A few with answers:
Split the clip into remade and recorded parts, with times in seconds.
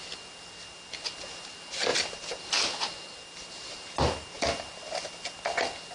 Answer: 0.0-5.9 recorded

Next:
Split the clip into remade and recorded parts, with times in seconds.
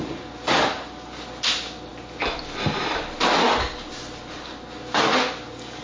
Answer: 0.0-5.8 recorded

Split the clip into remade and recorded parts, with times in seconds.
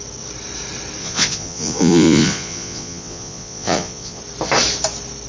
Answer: 0.0-1.0 recorded; 1.0-4.2 remade; 4.2-5.3 recorded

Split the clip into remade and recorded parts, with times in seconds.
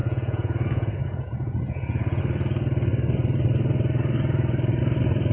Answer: 0.0-2.2 remade; 2.2-5.3 recorded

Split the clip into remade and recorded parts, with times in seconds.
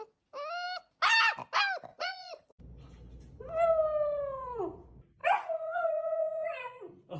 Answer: 0.0-1.9 recorded; 1.9-2.6 remade; 2.6-5.2 recorded; 5.2-6.8 remade; 6.8-7.2 recorded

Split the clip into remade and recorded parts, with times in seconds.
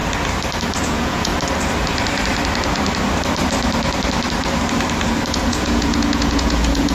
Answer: 0.0-0.8 recorded; 0.8-1.3 remade; 1.3-5.3 recorded; 5.3-6.9 remade